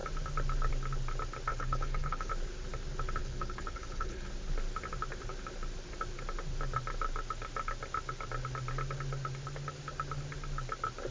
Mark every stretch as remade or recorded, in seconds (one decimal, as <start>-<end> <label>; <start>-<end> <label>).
0.0-1.5 recorded; 1.5-2.3 remade; 2.3-3.2 recorded; 3.2-4.3 remade; 4.3-11.1 recorded